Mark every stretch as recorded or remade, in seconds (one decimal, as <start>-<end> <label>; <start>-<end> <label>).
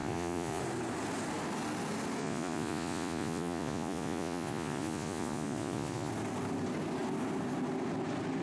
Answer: 0.0-0.6 remade; 0.6-2.2 recorded; 2.2-6.1 remade; 6.1-8.4 recorded